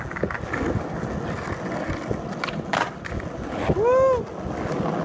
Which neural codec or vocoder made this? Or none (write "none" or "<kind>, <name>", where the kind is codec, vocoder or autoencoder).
none